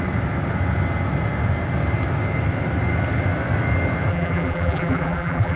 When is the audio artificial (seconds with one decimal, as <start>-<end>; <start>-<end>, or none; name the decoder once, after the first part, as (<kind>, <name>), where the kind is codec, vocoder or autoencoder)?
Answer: 4.1-5.6 (vocoder, BigVGAN v2)